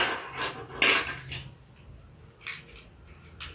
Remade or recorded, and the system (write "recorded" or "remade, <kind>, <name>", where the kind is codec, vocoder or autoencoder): recorded